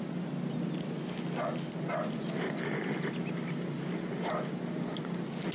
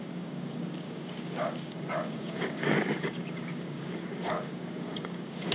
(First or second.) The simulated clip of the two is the second